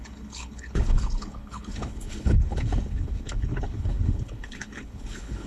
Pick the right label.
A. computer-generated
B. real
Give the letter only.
A